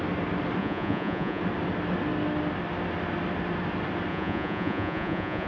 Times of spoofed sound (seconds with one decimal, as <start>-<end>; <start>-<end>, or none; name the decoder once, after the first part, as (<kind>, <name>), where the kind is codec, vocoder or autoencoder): 0.6-1.4 (vocoder, Vocos); 4.1-5.5